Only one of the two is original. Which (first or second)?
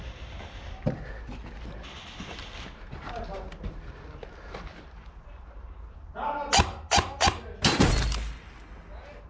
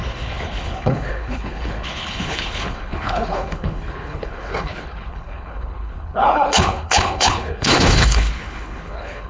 first